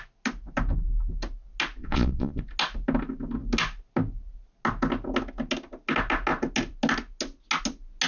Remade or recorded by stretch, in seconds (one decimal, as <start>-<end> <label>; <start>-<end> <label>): 0.0-1.8 recorded; 1.8-2.4 remade; 2.4-8.1 recorded